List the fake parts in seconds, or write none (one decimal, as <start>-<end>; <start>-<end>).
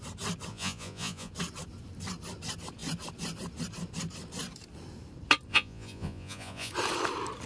0.5-1.3; 5.5-6.7